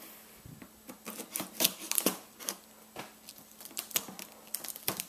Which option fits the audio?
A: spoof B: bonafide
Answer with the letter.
B